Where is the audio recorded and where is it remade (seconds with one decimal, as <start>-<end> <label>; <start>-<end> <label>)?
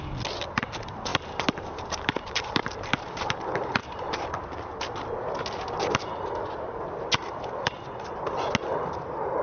0.0-1.1 recorded; 1.1-3.2 remade; 3.2-3.8 recorded; 3.8-4.5 remade; 4.5-9.4 recorded